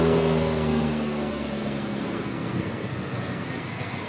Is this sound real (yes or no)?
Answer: no